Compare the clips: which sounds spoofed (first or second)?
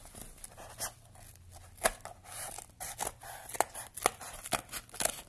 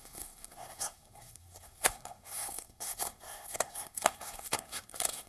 second